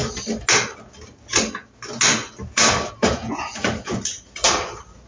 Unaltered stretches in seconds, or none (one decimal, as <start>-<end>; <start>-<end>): 0.0-3.1; 3.6-5.1